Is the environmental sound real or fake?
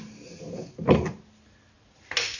real